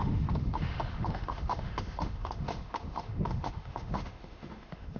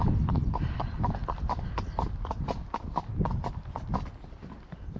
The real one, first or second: second